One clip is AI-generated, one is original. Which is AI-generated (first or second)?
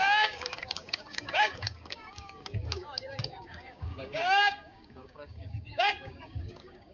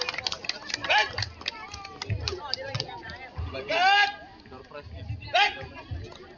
first